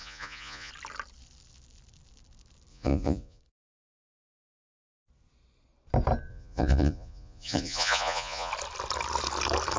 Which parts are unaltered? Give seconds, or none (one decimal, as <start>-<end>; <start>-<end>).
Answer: 0.7-2.7; 3.4-6.3; 8.5-9.8